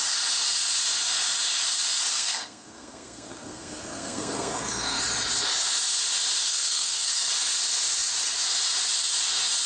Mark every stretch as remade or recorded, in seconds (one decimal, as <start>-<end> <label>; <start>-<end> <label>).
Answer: 0.0-2.1 recorded; 2.1-5.0 remade; 5.0-6.4 recorded; 6.4-7.3 remade; 7.3-9.7 recorded